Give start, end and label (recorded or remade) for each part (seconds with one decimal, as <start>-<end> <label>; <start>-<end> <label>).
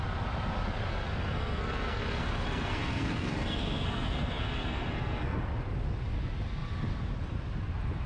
0.0-0.9 recorded; 0.9-5.4 remade; 5.4-8.1 recorded